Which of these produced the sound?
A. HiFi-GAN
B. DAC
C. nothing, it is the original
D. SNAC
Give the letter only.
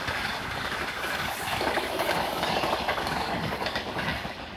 B